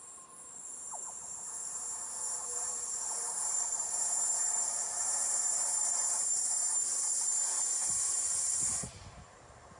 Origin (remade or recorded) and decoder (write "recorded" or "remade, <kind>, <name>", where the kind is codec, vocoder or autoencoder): remade, vocoder, BigVGAN v2